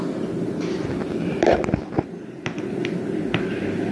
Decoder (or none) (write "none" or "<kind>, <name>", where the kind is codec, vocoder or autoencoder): none